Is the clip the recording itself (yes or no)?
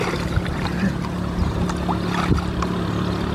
yes